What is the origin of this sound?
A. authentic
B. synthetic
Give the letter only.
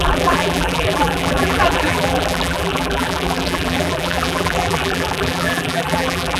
B